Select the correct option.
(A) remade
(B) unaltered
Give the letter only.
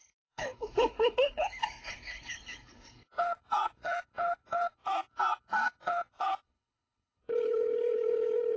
A